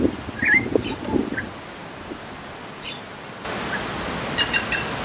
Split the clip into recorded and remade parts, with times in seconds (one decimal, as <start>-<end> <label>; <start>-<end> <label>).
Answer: 0.0-5.0 recorded